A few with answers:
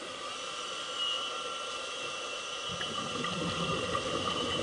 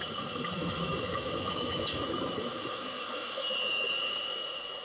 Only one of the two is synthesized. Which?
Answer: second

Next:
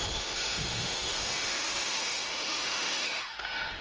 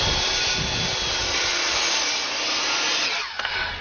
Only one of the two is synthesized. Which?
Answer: first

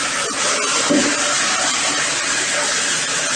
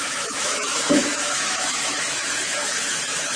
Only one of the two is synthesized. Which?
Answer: second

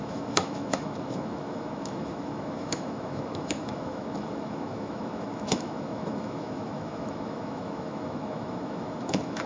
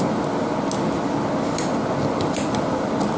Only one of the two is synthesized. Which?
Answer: first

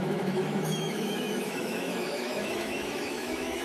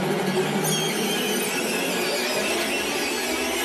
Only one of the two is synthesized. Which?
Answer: first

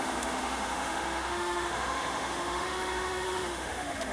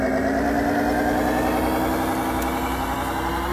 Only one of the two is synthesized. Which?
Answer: first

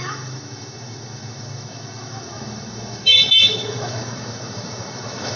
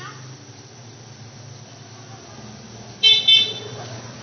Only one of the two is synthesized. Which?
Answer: first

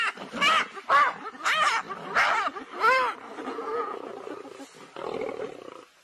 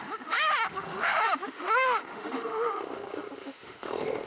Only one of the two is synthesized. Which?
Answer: second